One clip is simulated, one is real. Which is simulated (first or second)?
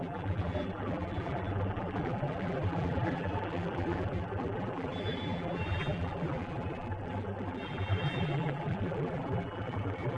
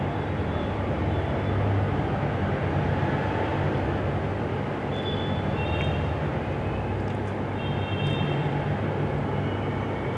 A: first